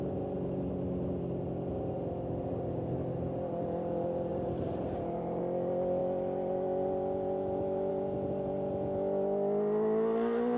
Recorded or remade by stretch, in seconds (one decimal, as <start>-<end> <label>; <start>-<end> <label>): 0.0-4.3 recorded; 4.3-5.4 remade; 5.4-10.6 recorded